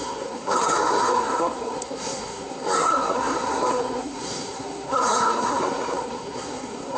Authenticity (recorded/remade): remade